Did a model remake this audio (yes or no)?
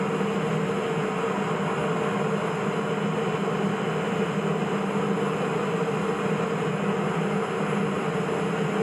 no